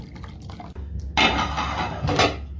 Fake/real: real